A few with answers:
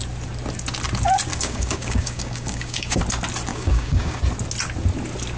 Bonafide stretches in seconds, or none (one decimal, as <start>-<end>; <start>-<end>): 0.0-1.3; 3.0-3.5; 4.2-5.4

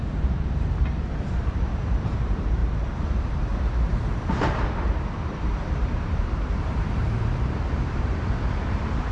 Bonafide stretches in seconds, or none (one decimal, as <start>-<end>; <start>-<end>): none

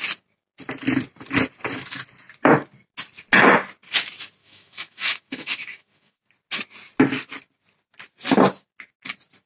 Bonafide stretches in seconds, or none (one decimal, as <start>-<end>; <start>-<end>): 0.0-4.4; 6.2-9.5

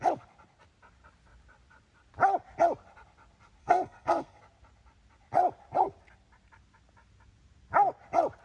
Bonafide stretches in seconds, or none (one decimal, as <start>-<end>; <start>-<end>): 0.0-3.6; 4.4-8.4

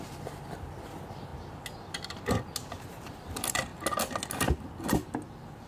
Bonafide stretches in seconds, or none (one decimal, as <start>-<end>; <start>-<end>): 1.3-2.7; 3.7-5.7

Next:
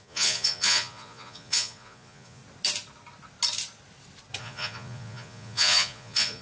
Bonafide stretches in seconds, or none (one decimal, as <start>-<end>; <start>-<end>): 2.4-4.4

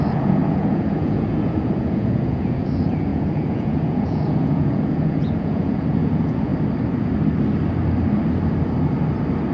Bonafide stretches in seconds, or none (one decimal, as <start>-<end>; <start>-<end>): 6.5-9.5

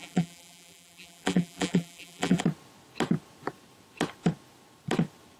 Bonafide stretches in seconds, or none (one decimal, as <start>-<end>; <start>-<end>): 2.4-5.4